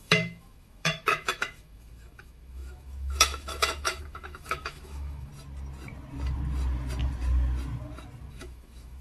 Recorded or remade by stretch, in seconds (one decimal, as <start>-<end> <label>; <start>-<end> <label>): 0.0-5.3 remade; 5.3-8.3 recorded; 8.3-9.0 remade